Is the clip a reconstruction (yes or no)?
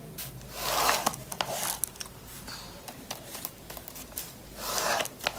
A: no